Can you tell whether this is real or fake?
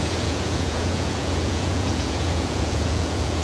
fake